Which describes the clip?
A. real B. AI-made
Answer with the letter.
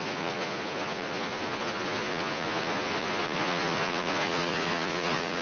B